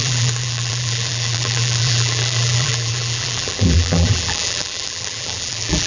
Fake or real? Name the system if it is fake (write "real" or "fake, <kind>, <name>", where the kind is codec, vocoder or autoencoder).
fake, vocoder, BigVGAN v2